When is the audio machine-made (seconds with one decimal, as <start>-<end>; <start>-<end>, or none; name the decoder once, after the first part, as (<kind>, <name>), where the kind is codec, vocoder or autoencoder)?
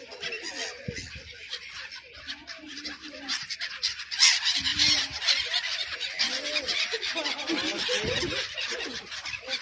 4.7-5.2 (vocoder, BigVGAN v2)